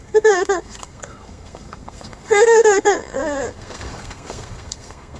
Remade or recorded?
remade